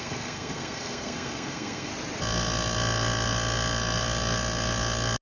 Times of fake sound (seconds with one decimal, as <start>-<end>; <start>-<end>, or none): 0.0-1.9